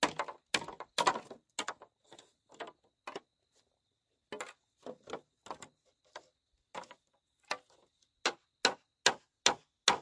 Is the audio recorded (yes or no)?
yes